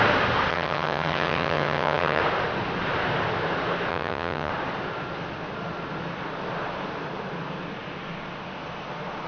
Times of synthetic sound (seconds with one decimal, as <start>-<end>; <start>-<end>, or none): 0.5-2.2; 3.9-4.5